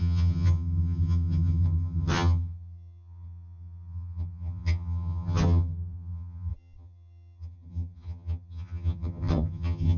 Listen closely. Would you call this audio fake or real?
fake